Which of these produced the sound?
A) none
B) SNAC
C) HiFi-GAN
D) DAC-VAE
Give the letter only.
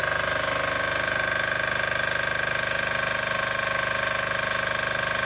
A